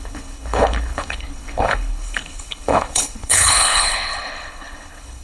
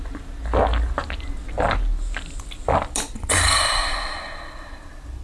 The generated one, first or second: first